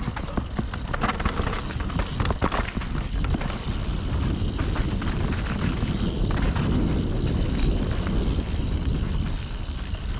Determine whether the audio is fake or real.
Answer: real